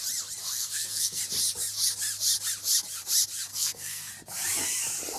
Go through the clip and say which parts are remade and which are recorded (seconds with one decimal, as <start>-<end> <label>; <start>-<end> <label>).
0.0-0.4 recorded; 0.4-1.2 remade; 1.2-3.5 recorded; 3.5-4.1 remade; 4.1-5.2 recorded